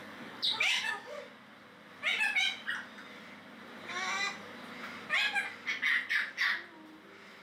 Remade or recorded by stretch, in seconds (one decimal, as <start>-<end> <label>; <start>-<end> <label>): 0.0-1.2 remade; 1.2-7.4 recorded

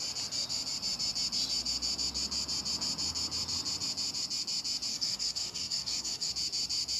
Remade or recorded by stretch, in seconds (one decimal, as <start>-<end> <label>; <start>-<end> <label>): 0.0-4.9 recorded; 4.9-6.3 remade; 6.3-7.0 recorded

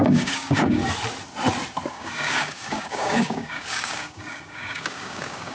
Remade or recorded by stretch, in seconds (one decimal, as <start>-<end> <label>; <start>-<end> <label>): 0.0-0.8 remade; 0.8-1.9 recorded; 1.9-5.5 remade

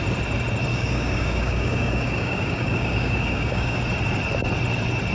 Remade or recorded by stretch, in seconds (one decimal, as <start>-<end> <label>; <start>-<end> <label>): 0.0-0.7 recorded; 0.7-3.8 remade; 3.8-5.1 recorded

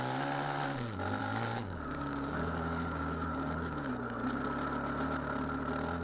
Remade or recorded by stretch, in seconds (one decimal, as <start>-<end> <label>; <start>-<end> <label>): 0.0-1.2 recorded; 1.2-3.9 remade; 3.9-6.0 recorded